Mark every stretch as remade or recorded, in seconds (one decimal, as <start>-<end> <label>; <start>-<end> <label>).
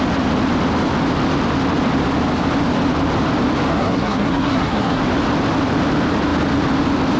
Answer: 0.0-3.7 recorded; 3.7-5.0 remade; 5.0-7.2 recorded